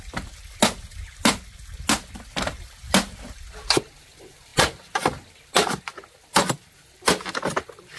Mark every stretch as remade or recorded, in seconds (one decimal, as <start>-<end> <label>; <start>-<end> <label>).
0.0-8.0 recorded

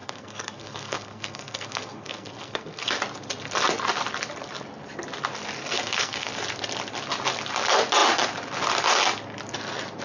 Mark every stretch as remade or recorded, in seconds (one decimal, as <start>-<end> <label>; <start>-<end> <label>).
0.0-2.9 remade; 2.9-5.6 recorded; 5.6-6.3 remade; 6.3-10.0 recorded